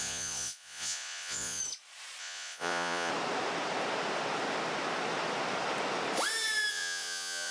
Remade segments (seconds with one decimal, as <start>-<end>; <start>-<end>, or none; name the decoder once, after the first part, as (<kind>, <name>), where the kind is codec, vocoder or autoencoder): 0.0-1.6 (vocoder, Vocos); 2.2-3.1; 6.7-7.5